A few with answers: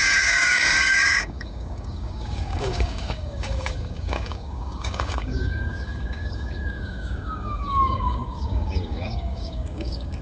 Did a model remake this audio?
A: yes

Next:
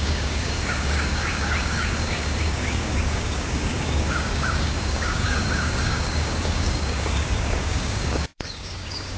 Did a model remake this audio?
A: yes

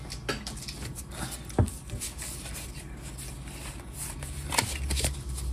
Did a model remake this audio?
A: no